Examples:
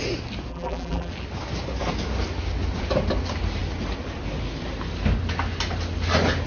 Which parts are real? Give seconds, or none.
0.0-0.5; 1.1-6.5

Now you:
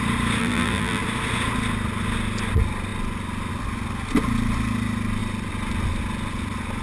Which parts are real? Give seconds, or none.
0.0-0.4; 1.0-6.8

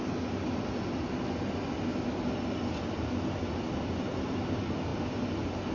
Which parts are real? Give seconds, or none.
0.0-4.9

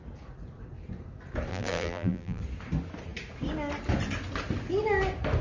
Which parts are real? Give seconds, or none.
0.0-1.5; 2.4-5.4